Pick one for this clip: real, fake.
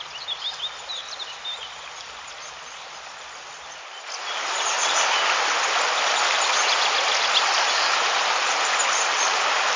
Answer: real